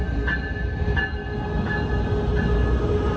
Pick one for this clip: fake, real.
real